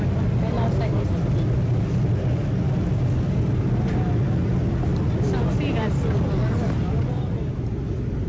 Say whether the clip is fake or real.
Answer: real